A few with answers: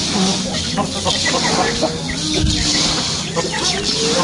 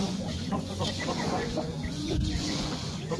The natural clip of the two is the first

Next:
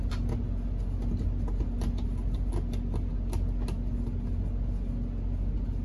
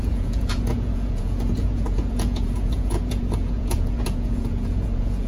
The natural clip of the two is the first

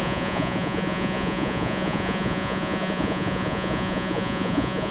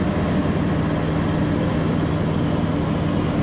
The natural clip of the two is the second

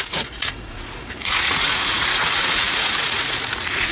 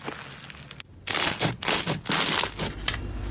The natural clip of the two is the second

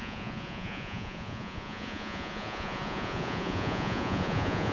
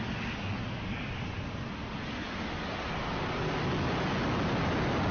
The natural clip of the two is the second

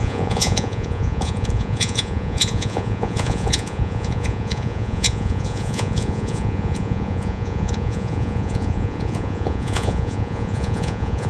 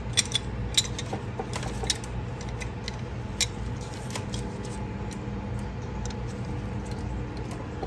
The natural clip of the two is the second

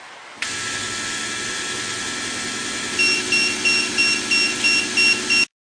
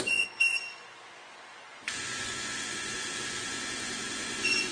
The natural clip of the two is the first